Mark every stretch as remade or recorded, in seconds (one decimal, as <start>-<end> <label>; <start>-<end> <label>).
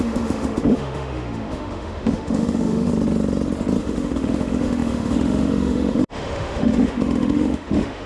0.0-2.9 remade; 2.9-3.8 recorded; 3.8-8.1 remade